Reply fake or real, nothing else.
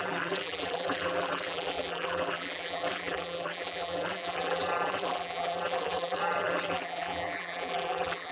fake